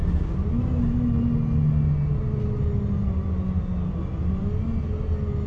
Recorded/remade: recorded